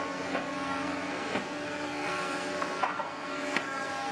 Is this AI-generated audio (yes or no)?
yes